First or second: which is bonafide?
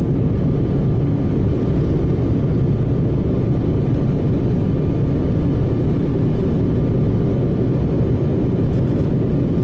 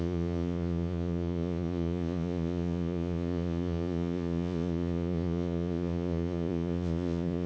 first